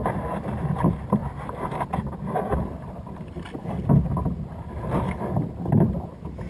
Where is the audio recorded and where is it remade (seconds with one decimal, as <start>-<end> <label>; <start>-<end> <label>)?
0.0-6.5 recorded